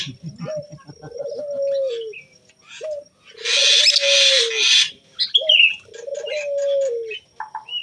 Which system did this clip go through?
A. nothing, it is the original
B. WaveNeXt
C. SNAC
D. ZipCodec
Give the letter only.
A